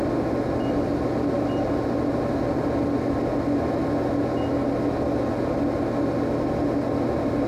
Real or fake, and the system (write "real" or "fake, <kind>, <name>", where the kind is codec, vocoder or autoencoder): real